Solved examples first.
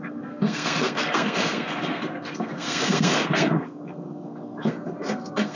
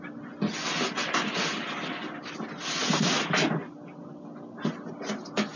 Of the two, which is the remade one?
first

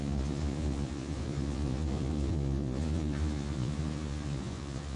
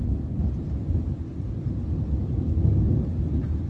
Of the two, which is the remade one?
first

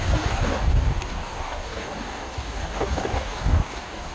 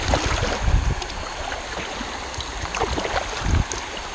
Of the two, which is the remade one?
first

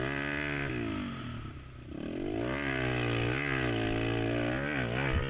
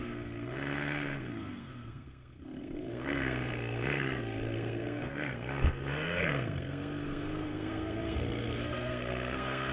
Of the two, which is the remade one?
second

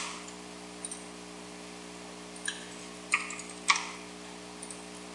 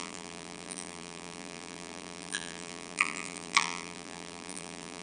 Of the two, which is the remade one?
second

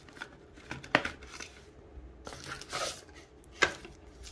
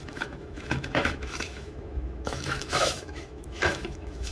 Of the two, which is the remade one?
second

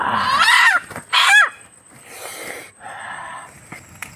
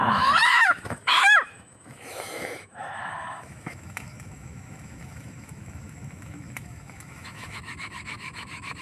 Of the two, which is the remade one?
second